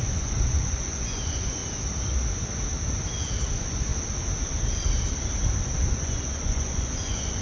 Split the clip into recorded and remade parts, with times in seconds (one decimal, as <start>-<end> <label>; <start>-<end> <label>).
0.0-1.6 remade; 1.6-3.5 recorded; 3.5-3.9 remade; 3.9-5.9 recorded; 5.9-7.4 remade